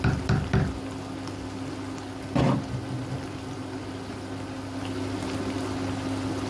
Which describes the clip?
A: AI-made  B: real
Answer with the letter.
B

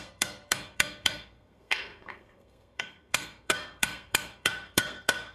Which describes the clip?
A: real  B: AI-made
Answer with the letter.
B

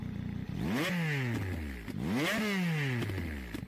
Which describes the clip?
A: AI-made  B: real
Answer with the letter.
B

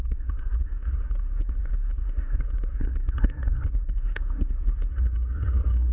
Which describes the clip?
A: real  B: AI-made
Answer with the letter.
B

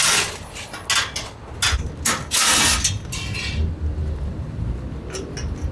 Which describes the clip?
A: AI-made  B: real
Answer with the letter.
B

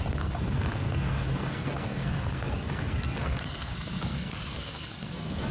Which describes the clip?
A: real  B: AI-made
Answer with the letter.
B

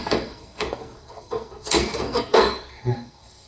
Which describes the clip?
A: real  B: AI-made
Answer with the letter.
B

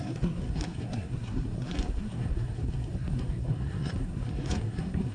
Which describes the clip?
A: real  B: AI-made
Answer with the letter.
B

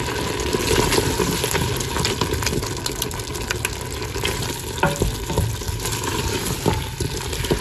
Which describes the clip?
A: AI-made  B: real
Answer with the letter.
B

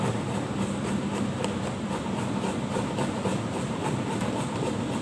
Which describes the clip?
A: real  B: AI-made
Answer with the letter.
A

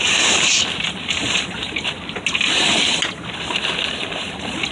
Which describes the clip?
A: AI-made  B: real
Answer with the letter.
B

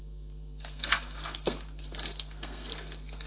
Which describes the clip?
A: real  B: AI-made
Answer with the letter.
B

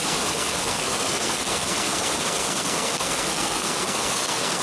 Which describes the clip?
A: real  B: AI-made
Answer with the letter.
B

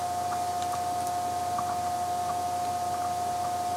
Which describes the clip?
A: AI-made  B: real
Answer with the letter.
B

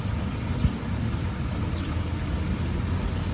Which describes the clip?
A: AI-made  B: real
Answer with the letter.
B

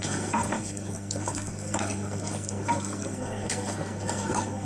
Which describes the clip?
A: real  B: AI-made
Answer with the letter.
B